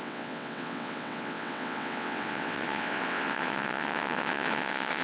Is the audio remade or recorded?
remade